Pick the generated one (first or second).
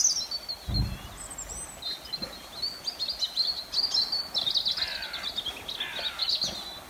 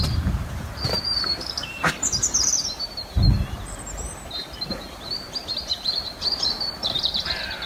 second